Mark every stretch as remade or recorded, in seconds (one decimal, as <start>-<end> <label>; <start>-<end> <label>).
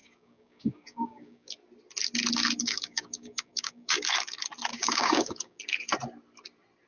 0.0-1.5 remade; 1.5-2.6 recorded; 2.6-4.0 remade; 4.0-4.7 recorded; 4.7-5.6 remade; 5.6-6.9 recorded